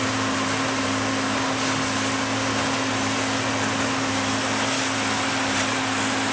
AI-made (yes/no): no